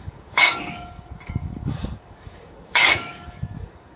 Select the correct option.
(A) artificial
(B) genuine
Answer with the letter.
A